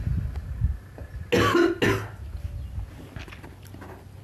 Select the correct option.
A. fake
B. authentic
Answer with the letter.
B